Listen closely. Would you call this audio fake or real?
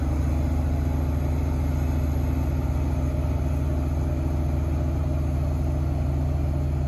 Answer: real